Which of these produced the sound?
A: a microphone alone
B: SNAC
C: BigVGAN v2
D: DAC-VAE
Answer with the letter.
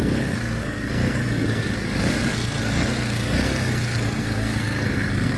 B